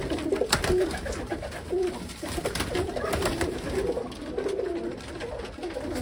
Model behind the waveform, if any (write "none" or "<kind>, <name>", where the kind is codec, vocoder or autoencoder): none